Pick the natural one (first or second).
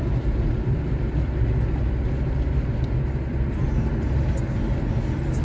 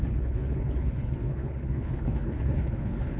first